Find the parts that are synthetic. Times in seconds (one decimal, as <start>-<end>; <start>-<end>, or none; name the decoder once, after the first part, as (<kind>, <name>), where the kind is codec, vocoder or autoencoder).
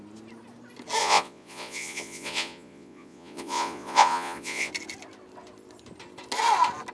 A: 1.0-4.7 (vocoder, Vocos)